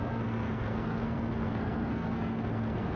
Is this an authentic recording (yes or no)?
no